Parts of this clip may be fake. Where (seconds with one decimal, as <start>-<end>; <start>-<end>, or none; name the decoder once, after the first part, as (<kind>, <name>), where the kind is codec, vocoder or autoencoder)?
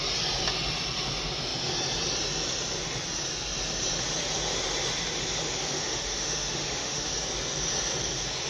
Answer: 5.6-7.1 (autoencoder, DAC-VAE)